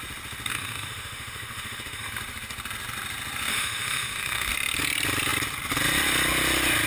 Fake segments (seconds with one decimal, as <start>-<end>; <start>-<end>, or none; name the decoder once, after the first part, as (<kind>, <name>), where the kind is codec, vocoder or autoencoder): 0.5-2.1 (autoencoder, DAC-VAE); 3.5-4.5